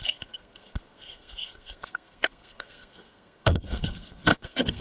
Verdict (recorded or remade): remade